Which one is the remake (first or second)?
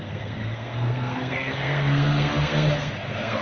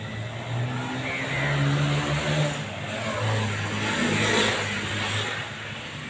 first